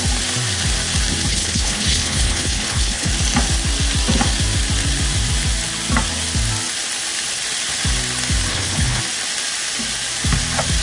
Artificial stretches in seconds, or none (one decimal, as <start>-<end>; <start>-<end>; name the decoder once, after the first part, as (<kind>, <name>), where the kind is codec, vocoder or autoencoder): 1.3-3.1 (codec, HILCodec); 8.5-9.0